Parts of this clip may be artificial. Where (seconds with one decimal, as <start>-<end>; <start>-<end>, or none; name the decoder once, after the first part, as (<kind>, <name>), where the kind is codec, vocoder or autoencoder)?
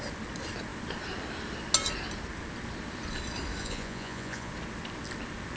3.6-4.5 (vocoder, Vocos)